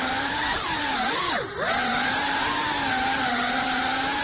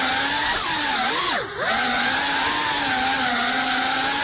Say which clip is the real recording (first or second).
second